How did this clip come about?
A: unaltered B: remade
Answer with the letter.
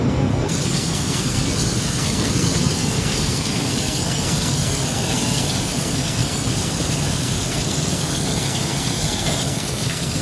B